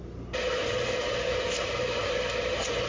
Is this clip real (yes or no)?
yes